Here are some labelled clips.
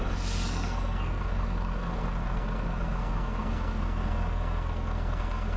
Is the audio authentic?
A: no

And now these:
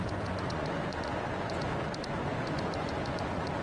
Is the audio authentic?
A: no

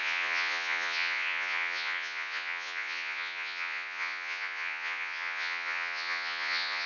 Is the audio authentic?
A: no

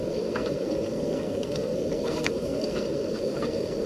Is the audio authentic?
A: no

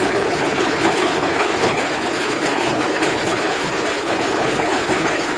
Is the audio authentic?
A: no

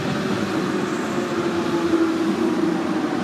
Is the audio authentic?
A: yes